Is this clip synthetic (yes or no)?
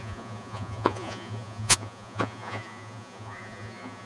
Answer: yes